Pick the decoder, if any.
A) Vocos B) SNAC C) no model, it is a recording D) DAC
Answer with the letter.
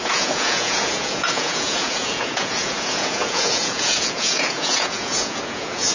A